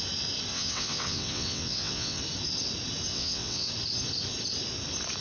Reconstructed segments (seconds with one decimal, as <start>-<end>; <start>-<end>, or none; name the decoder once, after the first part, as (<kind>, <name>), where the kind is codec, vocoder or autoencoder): 0.5-2.2 (vocoder, WaveNeXt); 3.1-3.7